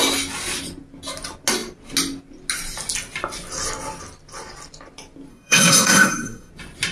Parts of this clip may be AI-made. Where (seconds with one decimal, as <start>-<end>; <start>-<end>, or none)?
5.3-6.5